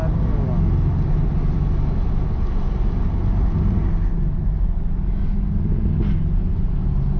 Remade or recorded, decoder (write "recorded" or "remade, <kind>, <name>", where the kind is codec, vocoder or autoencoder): recorded